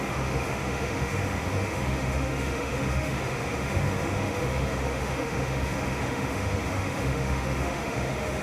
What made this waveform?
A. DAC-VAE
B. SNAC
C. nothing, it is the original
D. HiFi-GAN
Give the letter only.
A